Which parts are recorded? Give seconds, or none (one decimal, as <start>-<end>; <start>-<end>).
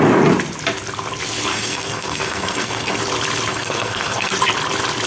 0.0-1.5; 3.0-3.5; 4.3-5.1